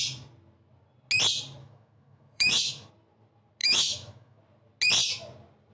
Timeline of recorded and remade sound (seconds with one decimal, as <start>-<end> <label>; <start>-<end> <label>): 0.0-1.6 recorded; 1.6-2.9 remade; 2.9-3.6 recorded; 3.6-4.4 remade; 4.4-5.7 recorded